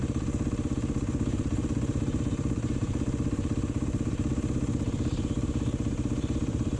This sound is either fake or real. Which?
fake